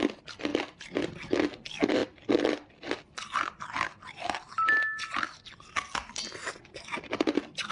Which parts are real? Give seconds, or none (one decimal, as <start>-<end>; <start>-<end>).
0.0-0.5; 1.1-2.0; 3.6-7.7